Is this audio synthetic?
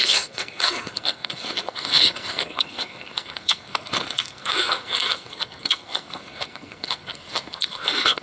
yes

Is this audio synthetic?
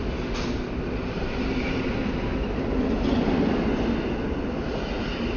no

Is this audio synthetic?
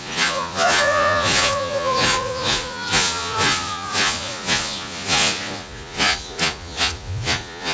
yes